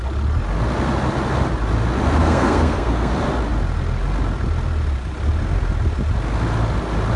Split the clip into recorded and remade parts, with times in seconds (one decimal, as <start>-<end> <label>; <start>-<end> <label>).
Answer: 0.0-2.2 recorded; 2.2-3.1 remade; 3.1-7.2 recorded